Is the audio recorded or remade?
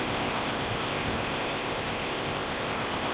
remade